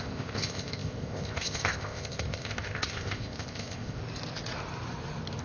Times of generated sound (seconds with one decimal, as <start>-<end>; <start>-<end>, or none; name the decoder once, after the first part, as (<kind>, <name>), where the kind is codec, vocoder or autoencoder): 0.0-4.0 (codec, ZipCodec)